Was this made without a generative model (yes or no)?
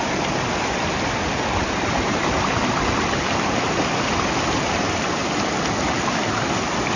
yes